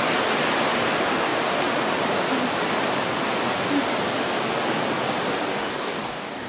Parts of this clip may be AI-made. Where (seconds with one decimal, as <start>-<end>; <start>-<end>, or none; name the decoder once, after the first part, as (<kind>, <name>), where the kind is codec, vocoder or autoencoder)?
5.6-6.5 (codec, DAC)